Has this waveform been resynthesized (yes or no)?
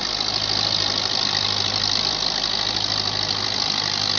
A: no